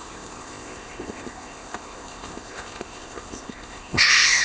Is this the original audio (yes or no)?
no